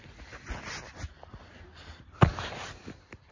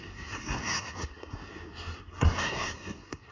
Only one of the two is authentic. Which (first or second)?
first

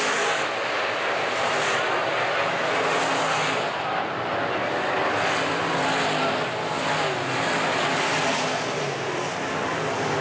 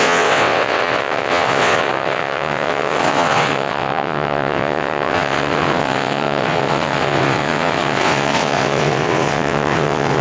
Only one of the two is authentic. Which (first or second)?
first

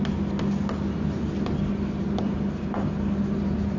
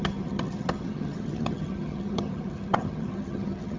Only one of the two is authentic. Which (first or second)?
first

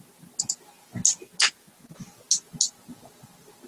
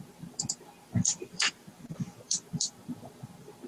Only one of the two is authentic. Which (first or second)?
first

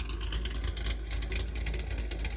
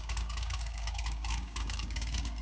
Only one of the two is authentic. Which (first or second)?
first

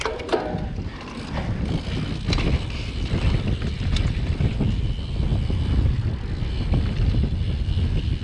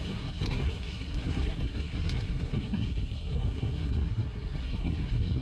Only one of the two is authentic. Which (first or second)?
first